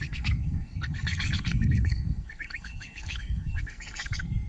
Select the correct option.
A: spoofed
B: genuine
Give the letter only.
A